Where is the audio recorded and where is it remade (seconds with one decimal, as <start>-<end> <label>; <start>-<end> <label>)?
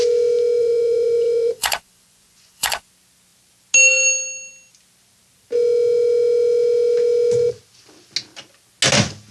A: 0.0-0.6 recorded; 0.6-2.9 remade; 2.9-9.3 recorded